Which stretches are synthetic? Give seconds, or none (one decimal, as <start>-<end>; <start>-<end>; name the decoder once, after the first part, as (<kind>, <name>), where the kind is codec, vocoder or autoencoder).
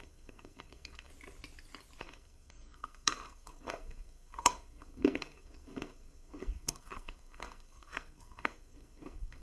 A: 0.0-1.1 (codec, SNAC); 2.0-9.4